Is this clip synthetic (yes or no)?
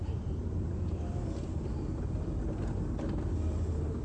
no